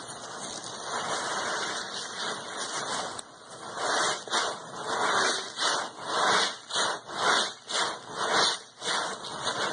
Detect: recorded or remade recorded